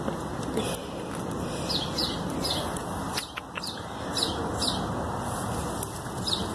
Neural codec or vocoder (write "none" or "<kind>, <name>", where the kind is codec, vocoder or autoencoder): none